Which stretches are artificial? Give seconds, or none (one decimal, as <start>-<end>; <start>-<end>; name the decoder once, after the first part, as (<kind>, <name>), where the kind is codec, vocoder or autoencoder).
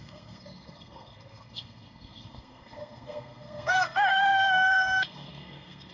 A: 0.0-5.9 (codec, SNAC)